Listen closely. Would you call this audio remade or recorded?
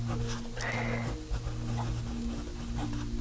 recorded